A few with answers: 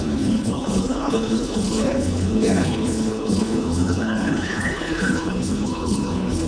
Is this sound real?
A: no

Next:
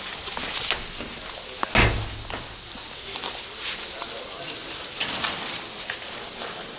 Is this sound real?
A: yes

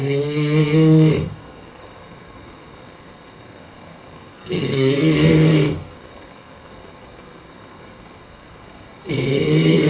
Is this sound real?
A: no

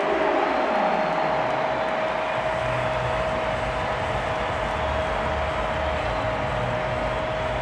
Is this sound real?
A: yes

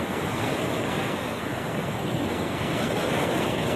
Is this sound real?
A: no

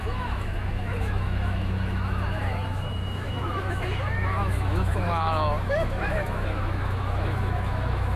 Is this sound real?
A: no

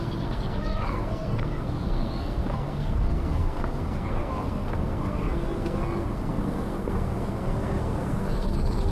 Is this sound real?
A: no